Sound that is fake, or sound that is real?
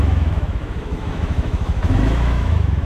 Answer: fake